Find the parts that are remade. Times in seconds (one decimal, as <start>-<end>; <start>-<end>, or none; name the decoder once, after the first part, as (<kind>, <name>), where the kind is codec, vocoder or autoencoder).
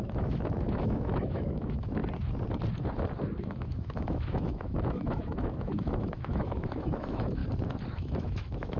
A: 0.0-2.0 (autoencoder, DAC-VAE); 3.4-7.4; 7.9-8.8